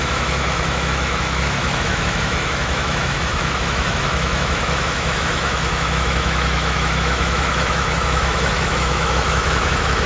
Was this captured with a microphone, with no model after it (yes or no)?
no